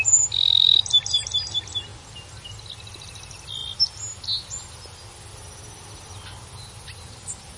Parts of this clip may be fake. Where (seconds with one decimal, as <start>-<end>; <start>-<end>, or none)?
none